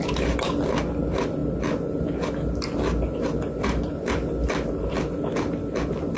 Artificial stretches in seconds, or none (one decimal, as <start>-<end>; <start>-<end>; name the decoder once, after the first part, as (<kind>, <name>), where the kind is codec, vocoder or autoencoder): none